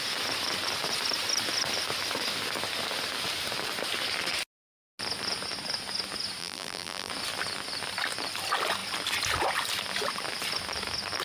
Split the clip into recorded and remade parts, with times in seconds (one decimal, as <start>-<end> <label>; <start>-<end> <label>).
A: 0.0-6.4 recorded; 6.4-7.1 remade; 7.1-11.2 recorded